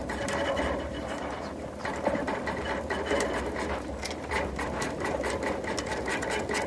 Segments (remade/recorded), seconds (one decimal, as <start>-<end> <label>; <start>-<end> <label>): 0.0-2.3 remade; 2.3-6.7 recorded